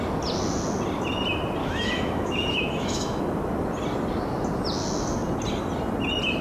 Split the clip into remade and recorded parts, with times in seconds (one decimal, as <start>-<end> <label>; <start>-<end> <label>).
0.0-1.6 recorded; 1.6-3.2 remade; 3.2-6.4 recorded